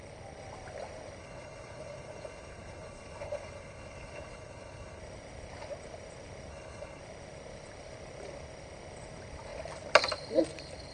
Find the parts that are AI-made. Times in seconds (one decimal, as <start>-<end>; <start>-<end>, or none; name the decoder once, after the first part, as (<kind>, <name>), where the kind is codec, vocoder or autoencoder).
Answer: 1.2-5.0 (codec, HILCodec); 6.5-7.0